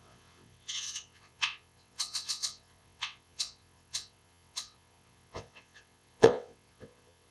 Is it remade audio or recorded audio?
remade